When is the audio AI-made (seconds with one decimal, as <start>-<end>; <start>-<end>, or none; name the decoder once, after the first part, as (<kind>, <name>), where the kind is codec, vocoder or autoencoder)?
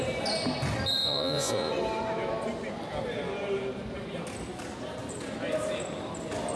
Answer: 1.0-1.7 (vocoder, Vocos)